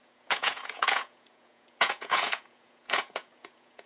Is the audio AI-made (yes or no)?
yes